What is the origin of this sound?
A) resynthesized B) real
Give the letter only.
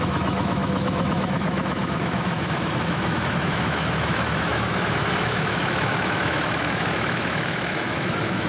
A